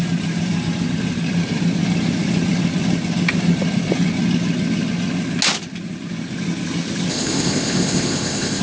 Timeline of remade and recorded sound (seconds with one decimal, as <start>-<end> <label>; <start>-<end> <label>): 0.0-7.1 recorded; 7.1-8.6 remade